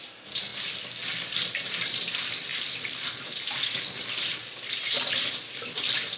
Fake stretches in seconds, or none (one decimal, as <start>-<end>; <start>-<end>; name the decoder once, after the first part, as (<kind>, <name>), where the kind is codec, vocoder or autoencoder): none